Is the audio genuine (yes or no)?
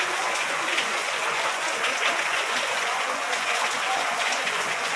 no